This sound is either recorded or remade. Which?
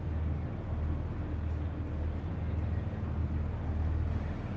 recorded